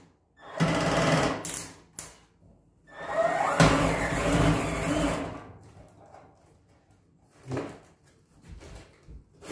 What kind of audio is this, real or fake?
real